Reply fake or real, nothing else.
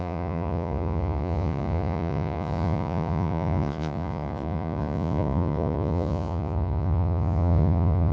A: fake